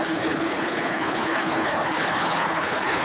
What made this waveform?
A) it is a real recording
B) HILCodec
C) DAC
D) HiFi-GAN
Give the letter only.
B